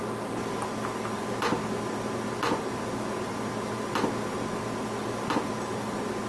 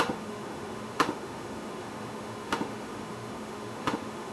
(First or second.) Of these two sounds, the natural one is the first